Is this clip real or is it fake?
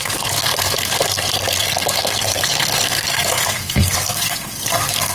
fake